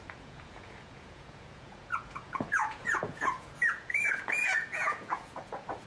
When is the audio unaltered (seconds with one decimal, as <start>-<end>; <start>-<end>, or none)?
none